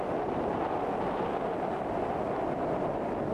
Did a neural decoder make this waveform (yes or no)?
yes